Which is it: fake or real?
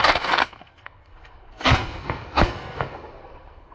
fake